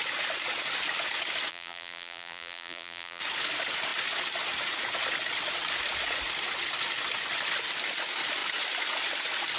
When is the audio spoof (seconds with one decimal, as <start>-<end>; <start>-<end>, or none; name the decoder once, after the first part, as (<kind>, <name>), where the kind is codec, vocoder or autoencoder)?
1.5-3.2 (vocoder, BigVGAN v2)